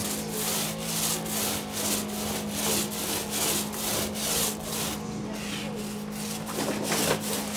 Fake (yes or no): no